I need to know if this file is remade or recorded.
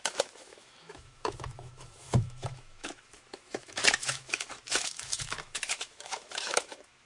remade